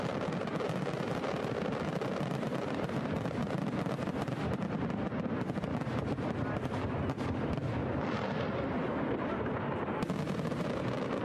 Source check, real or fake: real